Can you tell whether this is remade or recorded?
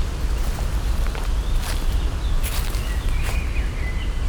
recorded